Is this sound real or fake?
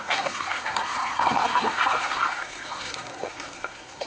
fake